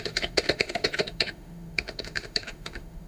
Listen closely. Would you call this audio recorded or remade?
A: remade